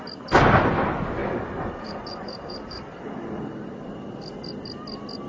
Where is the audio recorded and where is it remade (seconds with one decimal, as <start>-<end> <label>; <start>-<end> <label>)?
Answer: 0.0-1.2 recorded; 1.2-3.0 remade; 3.0-5.3 recorded